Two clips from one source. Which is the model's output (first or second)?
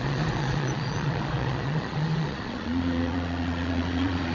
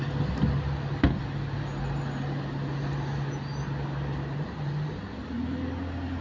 first